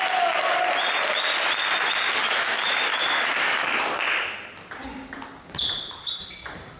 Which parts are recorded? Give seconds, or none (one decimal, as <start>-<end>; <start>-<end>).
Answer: 0.0-2.2; 3.8-6.8